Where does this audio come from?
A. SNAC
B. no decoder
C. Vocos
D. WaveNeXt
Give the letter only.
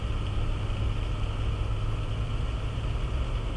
B